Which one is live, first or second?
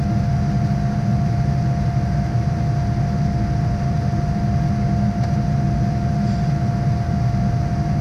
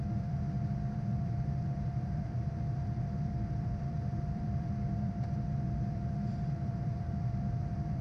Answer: first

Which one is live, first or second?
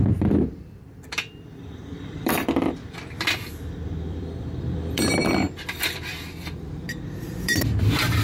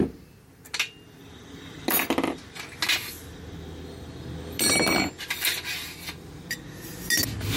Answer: second